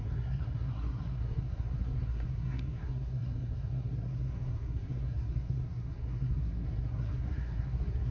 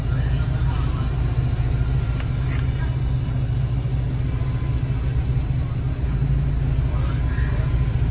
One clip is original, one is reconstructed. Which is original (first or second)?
second